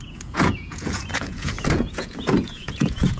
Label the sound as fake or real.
fake